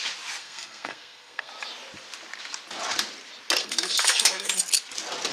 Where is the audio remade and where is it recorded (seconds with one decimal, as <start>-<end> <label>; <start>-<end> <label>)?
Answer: 0.0-0.4 recorded; 0.4-1.5 remade; 1.5-3.6 recorded; 3.6-4.5 remade; 4.5-5.3 recorded